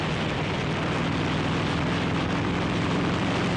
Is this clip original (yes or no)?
yes